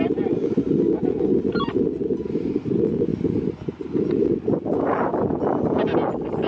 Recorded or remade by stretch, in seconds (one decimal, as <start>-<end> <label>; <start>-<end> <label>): 0.0-6.5 recorded